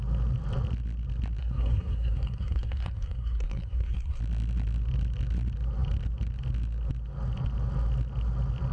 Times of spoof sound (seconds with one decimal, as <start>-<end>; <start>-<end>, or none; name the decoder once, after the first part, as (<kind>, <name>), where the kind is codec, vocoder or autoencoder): 1.4-4.2 (codec, SNAC)